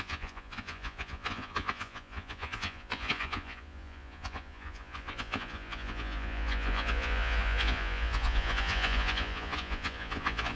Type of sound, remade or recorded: remade